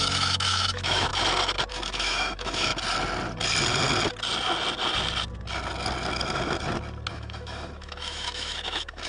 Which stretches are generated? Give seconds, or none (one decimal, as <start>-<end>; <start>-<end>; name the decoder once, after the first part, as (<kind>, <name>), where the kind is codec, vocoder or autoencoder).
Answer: 0.0-1.1 (autoencoder, DAC-VAE); 1.7-2.7; 7.1-9.1